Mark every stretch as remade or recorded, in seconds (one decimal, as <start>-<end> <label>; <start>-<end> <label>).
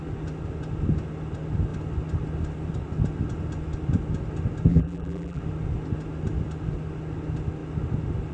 0.0-4.7 recorded; 4.7-5.4 remade; 5.4-8.3 recorded